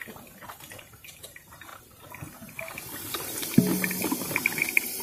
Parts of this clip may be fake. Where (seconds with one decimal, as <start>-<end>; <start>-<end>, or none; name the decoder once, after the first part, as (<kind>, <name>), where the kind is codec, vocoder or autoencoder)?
0.8-1.7 (vocoder, BigVGAN v2); 4.5-5.0